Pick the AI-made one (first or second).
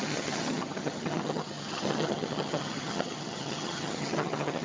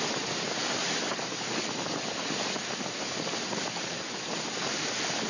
first